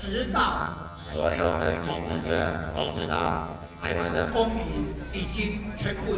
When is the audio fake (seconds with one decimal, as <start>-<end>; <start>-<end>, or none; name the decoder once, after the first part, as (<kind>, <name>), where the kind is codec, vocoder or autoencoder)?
0.6-4.3 (vocoder, HiFi-GAN)